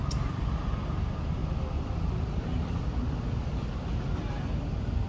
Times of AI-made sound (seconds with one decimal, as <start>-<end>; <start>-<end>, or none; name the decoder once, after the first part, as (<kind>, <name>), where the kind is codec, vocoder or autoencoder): none